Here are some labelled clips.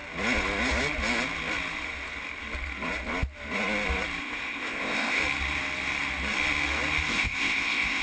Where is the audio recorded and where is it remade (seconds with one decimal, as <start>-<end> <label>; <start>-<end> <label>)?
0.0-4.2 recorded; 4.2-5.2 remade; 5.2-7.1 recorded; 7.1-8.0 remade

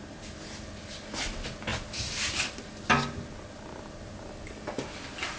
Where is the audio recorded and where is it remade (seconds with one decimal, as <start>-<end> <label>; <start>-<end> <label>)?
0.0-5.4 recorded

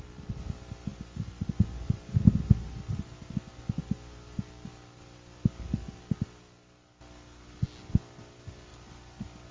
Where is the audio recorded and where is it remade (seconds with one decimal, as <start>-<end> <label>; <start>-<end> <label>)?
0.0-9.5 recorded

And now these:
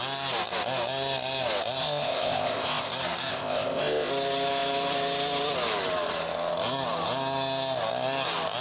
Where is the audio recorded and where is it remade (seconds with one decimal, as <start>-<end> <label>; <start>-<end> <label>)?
0.0-1.8 recorded; 1.8-2.9 remade; 2.9-3.3 recorded; 3.3-4.1 remade; 4.1-8.6 recorded

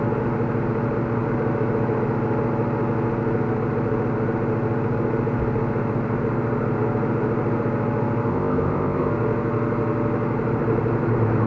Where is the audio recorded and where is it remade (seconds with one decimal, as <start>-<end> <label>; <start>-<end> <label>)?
0.0-8.3 recorded; 8.3-9.1 remade; 9.1-11.5 recorded